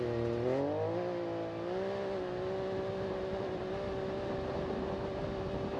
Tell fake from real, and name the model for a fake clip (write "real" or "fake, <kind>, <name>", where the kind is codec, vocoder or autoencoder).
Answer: real